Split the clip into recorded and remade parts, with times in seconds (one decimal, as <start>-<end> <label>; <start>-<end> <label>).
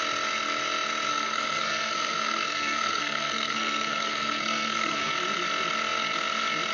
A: 0.0-1.1 recorded; 1.1-5.1 remade; 5.1-6.7 recorded